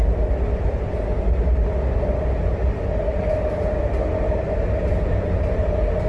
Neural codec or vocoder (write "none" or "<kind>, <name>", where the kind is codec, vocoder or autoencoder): none